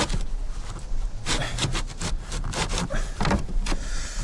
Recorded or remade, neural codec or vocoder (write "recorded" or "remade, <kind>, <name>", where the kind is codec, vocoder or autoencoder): recorded